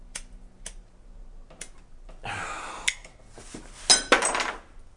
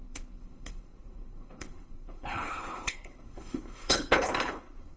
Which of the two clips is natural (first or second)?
first